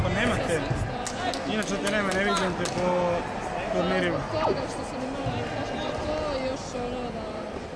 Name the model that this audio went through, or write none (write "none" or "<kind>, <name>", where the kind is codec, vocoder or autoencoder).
none